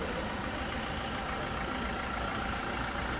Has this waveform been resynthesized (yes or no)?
no